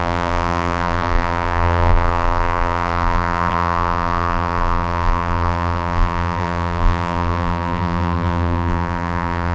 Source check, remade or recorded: remade